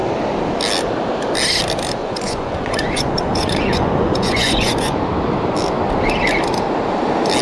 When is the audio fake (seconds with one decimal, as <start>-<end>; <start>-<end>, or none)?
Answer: 2.0-5.0